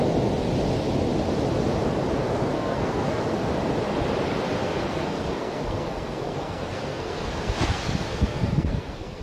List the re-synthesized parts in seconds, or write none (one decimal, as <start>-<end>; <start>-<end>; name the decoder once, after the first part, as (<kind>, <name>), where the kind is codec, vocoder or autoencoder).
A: 2.2-3.4 (codec, SNAC); 4.6-9.2